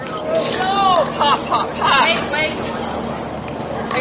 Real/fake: real